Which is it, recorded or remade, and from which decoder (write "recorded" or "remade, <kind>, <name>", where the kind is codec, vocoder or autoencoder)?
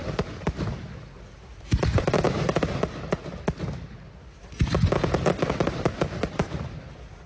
recorded